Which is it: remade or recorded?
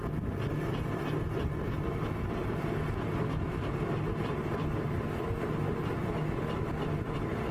recorded